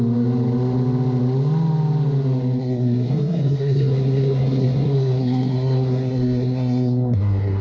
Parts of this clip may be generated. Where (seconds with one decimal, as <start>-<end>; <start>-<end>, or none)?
2.6-7.6